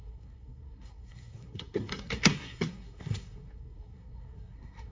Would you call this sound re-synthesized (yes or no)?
yes